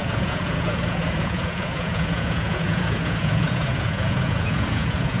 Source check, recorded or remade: remade